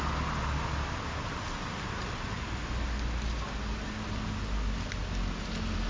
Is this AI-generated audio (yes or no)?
no